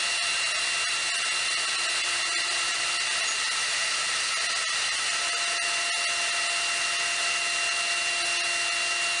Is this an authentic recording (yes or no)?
yes